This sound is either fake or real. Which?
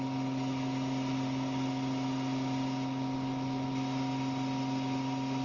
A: real